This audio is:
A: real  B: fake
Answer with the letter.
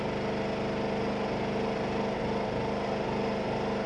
A